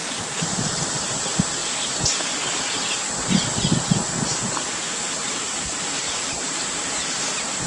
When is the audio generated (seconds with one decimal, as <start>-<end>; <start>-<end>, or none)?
0.0-1.6; 5.1-7.7